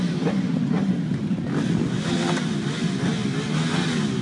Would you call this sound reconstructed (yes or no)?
no